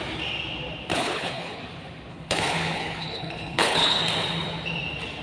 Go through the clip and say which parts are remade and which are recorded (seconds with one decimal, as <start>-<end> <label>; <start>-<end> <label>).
0.0-0.9 recorded; 0.9-1.6 remade; 1.6-2.1 recorded; 2.1-4.0 remade; 4.0-5.2 recorded